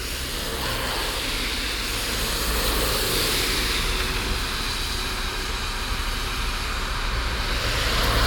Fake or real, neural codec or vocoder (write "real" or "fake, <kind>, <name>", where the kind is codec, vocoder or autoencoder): real